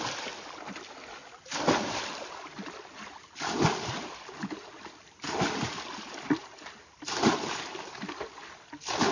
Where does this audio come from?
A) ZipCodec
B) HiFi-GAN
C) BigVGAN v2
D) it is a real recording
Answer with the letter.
D